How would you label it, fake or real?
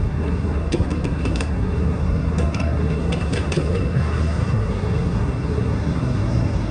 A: fake